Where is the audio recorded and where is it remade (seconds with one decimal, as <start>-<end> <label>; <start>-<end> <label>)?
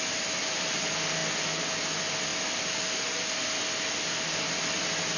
0.0-5.2 recorded